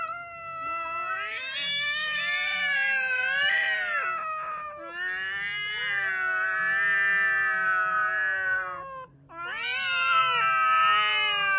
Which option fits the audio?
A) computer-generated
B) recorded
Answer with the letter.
B